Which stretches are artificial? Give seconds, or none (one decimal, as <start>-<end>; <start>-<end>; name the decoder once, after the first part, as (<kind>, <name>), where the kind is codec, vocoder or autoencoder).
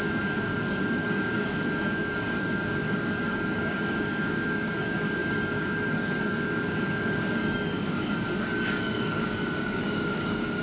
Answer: 0.0-10.6 (codec, DAC)